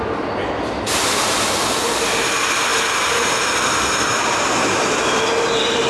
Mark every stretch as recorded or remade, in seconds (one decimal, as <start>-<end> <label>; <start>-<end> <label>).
0.0-5.9 recorded